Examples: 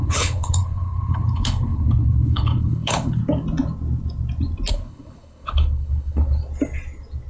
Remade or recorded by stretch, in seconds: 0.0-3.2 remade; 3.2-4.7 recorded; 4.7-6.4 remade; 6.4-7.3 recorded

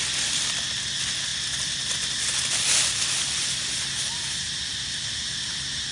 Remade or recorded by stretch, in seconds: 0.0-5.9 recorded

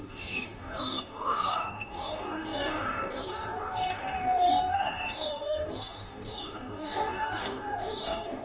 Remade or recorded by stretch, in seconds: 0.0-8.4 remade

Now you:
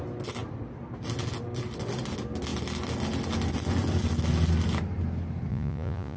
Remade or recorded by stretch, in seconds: 0.0-5.5 recorded; 5.5-6.2 remade